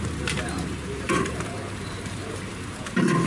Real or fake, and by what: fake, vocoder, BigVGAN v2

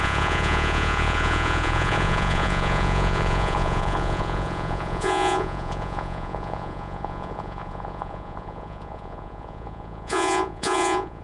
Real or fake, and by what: fake, vocoder, Vocos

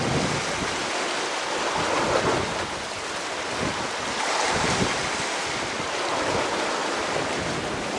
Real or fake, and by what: real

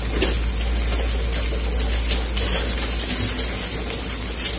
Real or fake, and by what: real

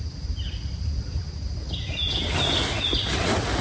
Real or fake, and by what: real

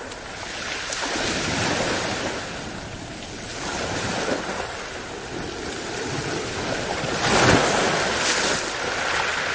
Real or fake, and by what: real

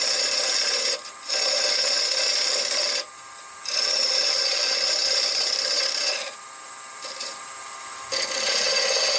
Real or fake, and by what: fake, vocoder, BigVGAN v2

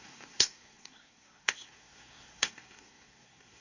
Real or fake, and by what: fake, codec, SNAC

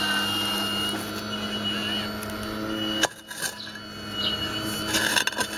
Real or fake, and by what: real